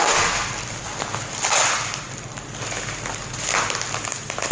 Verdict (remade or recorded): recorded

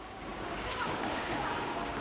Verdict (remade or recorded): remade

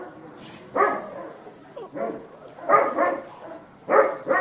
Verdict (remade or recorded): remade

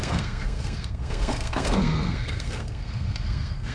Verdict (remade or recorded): remade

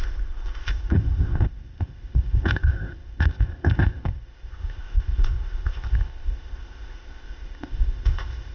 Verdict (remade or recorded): remade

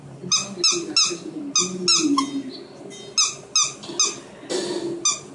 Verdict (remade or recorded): recorded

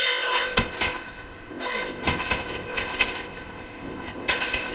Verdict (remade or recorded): remade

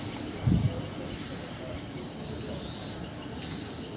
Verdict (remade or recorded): recorded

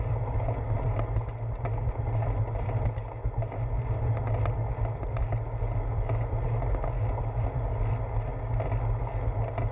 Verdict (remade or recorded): recorded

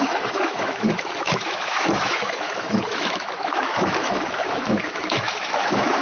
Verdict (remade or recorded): remade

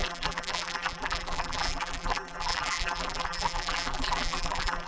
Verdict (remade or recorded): remade